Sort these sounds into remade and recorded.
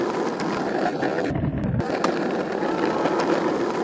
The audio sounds recorded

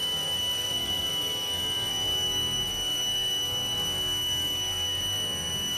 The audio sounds remade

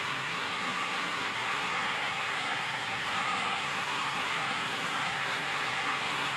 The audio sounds remade